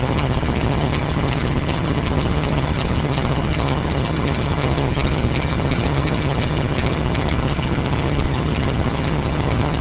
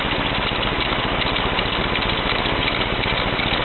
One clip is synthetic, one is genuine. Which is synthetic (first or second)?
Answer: first